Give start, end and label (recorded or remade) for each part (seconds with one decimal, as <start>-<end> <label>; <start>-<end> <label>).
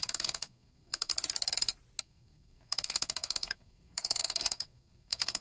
0.0-1.1 remade; 1.1-2.0 recorded; 2.0-5.4 remade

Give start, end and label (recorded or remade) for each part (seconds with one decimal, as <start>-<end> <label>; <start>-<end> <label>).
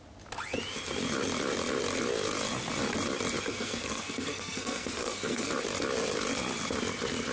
0.0-3.5 recorded; 3.5-5.5 remade; 5.5-7.3 recorded